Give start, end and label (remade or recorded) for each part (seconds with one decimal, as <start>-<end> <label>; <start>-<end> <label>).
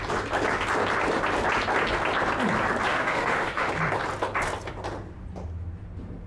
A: 0.0-2.9 recorded; 2.9-3.7 remade; 3.7-6.3 recorded